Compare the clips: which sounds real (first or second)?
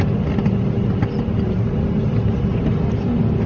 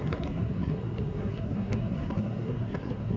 first